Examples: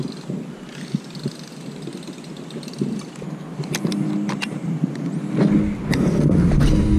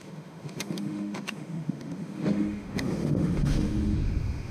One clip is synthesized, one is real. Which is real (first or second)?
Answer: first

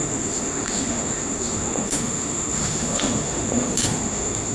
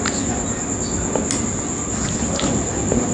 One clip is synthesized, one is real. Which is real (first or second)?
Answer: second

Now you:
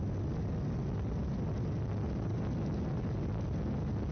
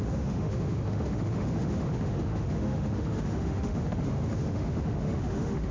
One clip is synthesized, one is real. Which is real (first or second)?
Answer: first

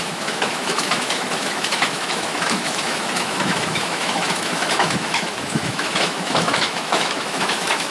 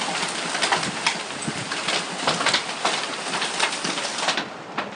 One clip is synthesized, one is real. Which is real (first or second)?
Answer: second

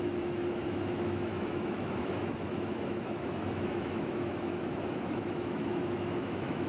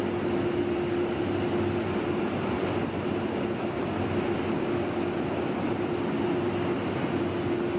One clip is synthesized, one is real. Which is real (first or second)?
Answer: second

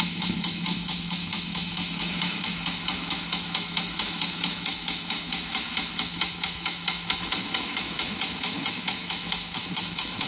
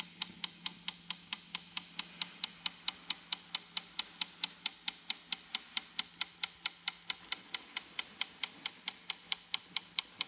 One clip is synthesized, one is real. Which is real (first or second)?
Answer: second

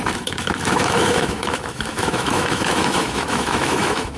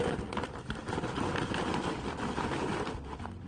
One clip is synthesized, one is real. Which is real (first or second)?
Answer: second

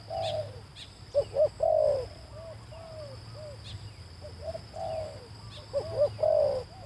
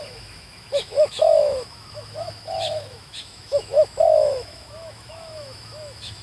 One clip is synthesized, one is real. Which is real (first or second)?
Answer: first